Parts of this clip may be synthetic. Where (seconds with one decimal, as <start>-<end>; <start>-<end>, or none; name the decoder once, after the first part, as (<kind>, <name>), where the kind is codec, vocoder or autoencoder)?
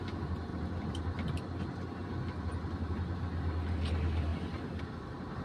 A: none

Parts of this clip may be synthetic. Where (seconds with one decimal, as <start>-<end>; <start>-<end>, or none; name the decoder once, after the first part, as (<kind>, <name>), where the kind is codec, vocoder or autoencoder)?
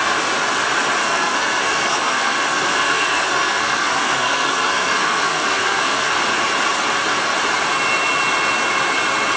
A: 1.0-6.1 (codec, SNAC)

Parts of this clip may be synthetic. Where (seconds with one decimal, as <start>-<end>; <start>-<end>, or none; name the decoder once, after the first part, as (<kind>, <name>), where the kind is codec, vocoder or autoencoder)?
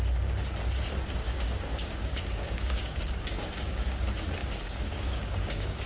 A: 1.2-4.0 (codec, DAC); 4.4-5.9